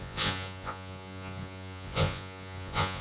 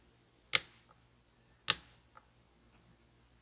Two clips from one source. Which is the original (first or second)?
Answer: second